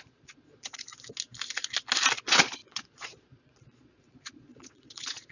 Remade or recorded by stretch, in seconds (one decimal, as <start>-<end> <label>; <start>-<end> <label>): 0.0-0.9 remade; 0.9-2.2 recorded; 2.2-5.3 remade